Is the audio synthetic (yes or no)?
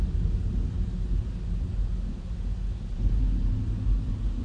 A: no